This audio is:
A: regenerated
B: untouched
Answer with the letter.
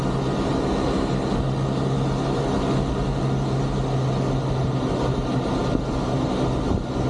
B